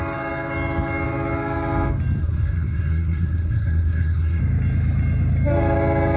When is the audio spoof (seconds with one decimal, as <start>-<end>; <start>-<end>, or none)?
2.2-4.4